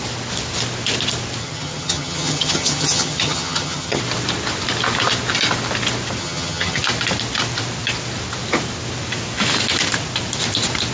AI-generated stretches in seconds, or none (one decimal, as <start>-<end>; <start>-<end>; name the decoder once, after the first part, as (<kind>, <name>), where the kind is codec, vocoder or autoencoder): 1.4-4.0 (vocoder, HiFi-GAN); 6.2-6.8